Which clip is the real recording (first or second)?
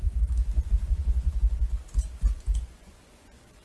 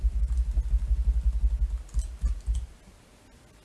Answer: second